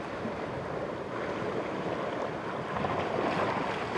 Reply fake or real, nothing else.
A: real